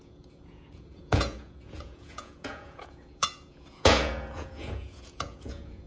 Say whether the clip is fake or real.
fake